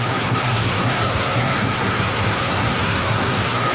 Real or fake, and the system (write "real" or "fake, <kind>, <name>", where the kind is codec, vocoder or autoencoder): fake, codec, SNAC